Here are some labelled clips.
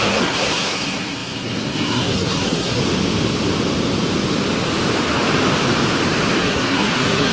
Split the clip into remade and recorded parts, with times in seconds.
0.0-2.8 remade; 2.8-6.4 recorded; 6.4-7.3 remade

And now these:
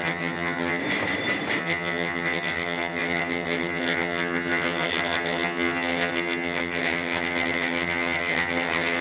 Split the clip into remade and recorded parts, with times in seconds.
0.0-0.8 remade; 0.8-1.6 recorded; 1.6-9.0 remade

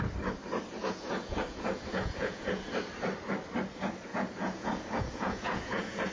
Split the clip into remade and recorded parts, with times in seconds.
0.0-0.8 recorded; 0.8-2.7 remade; 2.7-4.1 recorded; 4.1-6.1 remade

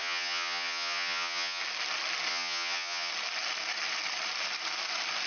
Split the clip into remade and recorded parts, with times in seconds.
0.0-1.6 remade; 1.6-2.3 recorded; 2.3-3.1 remade; 3.1-5.3 recorded

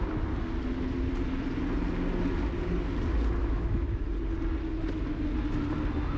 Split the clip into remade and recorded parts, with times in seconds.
0.0-3.4 recorded; 3.4-4.0 remade; 4.0-6.2 recorded

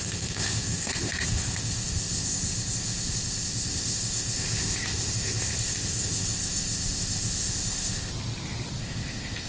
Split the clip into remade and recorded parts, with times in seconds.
0.0-8.1 remade; 8.1-8.8 recorded; 8.8-9.5 remade

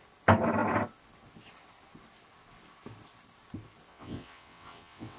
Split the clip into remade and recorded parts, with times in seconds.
0.0-3.9 recorded; 3.9-5.2 remade

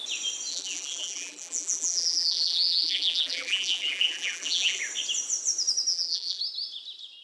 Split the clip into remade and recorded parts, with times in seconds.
0.0-0.5 recorded; 0.5-4.8 remade; 4.8-5.9 recorded; 5.9-6.4 remade; 6.4-7.2 recorded